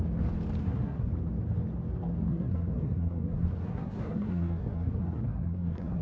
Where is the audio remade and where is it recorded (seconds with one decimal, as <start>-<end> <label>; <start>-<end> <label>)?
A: 0.0-0.6 recorded; 0.6-1.1 remade; 1.1-2.3 recorded; 2.3-6.0 remade